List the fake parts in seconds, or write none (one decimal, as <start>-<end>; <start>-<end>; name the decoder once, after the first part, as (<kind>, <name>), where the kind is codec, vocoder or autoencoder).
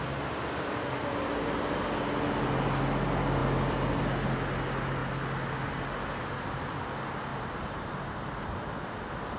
0.0-0.9 (vocoder, BigVGAN v2); 7.3-8.7